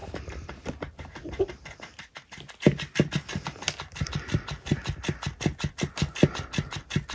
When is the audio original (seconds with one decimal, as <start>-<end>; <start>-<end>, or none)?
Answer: 2.5-7.1

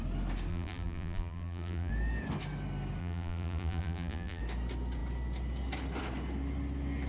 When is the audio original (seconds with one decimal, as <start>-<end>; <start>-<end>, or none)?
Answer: 0.0-0.5; 1.9-3.0; 4.4-7.1

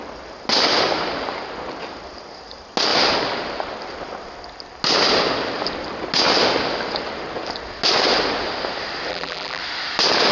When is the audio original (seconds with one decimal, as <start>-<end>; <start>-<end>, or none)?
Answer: 0.0-9.1; 9.6-10.3

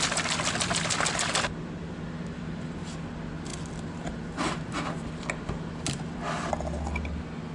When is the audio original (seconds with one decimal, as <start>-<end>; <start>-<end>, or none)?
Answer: 0.0-7.5

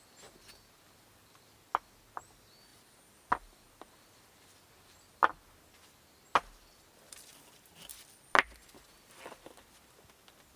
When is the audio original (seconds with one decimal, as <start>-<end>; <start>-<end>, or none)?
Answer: 0.0-10.6

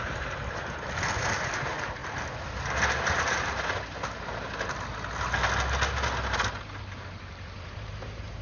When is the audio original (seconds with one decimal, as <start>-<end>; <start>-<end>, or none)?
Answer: 2.0-6.8

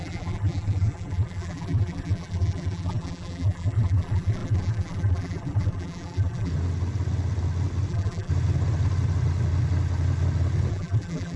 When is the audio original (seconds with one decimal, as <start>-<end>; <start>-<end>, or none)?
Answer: 6.5-7.9; 8.3-10.7

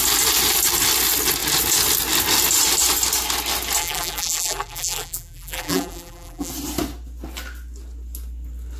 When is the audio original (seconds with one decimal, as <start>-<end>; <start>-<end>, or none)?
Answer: 0.0-3.8; 6.5-8.8